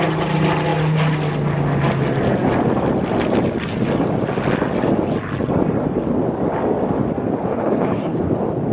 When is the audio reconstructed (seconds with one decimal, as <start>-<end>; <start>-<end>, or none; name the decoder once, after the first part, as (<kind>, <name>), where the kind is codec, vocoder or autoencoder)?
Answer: 7.5-8.2 (codec, HILCodec)